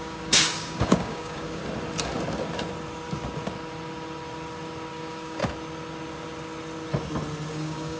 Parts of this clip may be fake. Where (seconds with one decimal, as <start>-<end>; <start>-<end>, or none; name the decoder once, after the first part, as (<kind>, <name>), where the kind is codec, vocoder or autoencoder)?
0.0-1.6 (codec, DAC); 4.9-5.4; 7.5-8.0